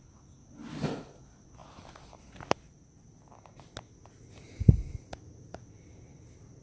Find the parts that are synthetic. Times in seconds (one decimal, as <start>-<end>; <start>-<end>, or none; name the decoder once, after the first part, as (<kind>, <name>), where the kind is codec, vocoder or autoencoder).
none